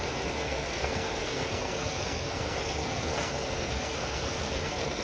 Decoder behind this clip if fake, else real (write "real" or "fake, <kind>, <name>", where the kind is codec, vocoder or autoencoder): fake, codec, SNAC